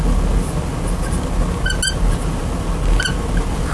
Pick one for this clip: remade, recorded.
recorded